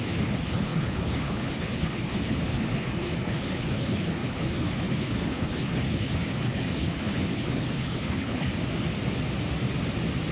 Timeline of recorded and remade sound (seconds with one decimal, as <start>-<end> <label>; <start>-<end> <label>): 0.0-8.5 remade; 8.5-10.3 recorded

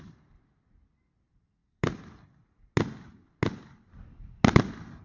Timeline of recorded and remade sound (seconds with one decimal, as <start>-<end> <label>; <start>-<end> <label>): 0.0-5.0 recorded

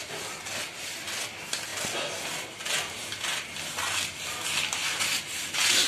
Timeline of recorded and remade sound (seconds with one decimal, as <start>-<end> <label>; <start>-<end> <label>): 0.0-5.9 recorded

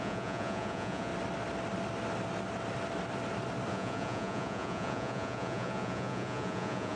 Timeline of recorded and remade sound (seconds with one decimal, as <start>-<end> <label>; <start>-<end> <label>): 0.0-1.1 remade; 1.1-3.7 recorded; 3.7-7.0 remade

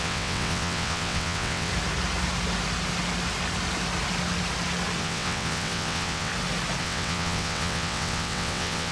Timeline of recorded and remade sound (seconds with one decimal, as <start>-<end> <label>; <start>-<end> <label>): 0.0-1.7 remade; 1.7-5.0 recorded; 5.0-6.3 remade; 6.3-6.8 recorded; 6.8-8.9 remade

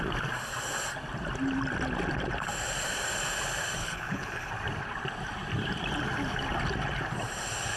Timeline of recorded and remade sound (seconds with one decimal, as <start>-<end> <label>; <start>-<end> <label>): 0.0-3.8 recorded; 3.8-4.5 remade; 4.5-7.8 recorded

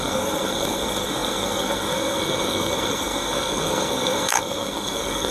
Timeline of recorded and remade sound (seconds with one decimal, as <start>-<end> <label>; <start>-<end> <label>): 0.0-5.3 remade

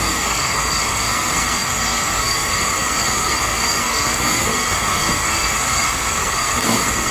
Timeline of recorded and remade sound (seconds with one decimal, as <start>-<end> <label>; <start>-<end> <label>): 0.0-7.1 remade